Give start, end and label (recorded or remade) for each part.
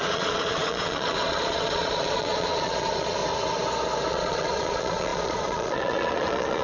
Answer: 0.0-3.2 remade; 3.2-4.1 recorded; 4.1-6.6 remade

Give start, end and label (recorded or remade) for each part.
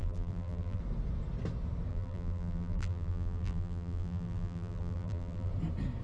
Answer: 0.0-0.8 remade; 0.8-1.9 recorded; 1.9-5.5 remade; 5.5-6.0 recorded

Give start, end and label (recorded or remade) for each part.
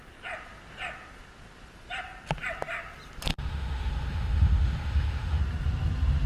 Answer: 0.0-3.3 recorded; 3.3-5.4 remade; 5.4-6.3 recorded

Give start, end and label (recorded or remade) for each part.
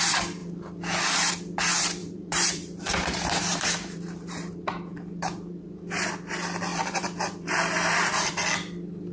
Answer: 0.0-0.4 recorded; 0.4-1.3 remade; 1.3-2.0 recorded; 2.0-6.1 remade; 6.1-6.7 recorded; 6.7-8.3 remade; 8.3-9.1 recorded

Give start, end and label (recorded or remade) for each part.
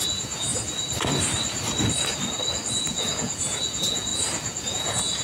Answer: 0.0-0.5 remade; 0.5-2.7 recorded; 2.7-4.1 remade; 4.1-4.7 recorded; 4.7-5.2 remade